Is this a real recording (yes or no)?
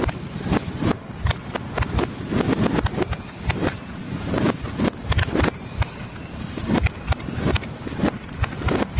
no